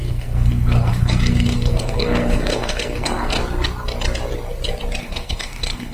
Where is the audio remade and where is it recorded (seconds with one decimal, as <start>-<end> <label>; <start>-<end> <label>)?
0.0-3.4 remade; 3.4-5.0 recorded; 5.0-5.9 remade